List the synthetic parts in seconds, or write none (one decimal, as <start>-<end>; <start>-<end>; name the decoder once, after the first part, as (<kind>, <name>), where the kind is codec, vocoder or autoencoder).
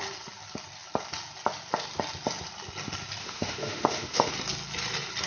3.2-4.3 (autoencoder, DAC-VAE)